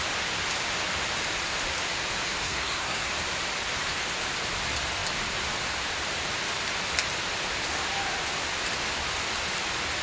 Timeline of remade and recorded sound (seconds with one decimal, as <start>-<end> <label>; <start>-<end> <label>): 0.0-2.4 recorded; 2.4-3.1 remade; 3.1-10.0 recorded